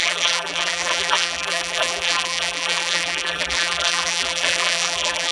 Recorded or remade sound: remade